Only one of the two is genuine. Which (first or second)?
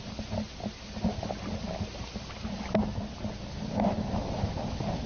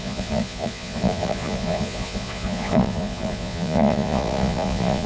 first